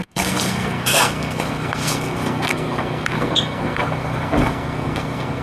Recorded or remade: remade